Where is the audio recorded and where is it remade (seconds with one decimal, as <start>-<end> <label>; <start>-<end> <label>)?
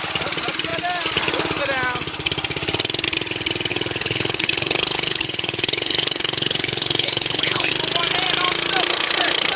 0.0-3.7 recorded; 3.7-7.7 remade; 7.7-9.6 recorded